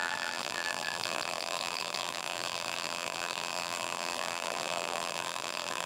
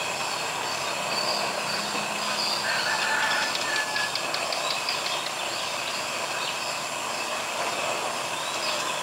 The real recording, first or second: second